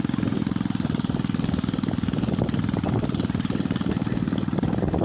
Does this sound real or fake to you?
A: real